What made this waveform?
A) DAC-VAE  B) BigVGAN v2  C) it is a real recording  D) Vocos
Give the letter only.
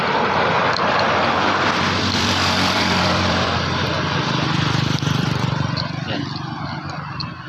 B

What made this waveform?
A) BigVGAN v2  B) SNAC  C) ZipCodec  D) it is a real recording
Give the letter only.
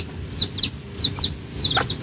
D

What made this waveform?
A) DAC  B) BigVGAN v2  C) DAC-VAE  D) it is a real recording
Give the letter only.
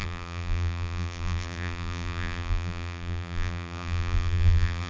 B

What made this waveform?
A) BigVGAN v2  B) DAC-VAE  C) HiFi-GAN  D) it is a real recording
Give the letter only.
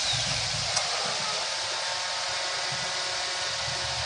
D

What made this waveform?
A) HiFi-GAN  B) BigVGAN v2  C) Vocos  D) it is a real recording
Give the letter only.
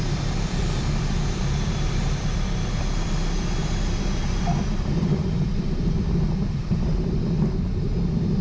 B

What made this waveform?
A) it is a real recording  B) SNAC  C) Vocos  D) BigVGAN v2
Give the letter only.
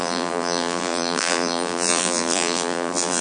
D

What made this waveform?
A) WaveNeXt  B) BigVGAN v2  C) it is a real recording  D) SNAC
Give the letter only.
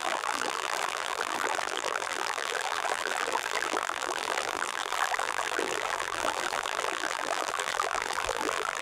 B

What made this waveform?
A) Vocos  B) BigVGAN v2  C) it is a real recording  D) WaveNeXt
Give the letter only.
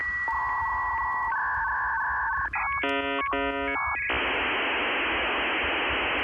C